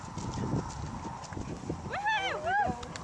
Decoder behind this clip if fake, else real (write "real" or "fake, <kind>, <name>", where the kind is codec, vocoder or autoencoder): real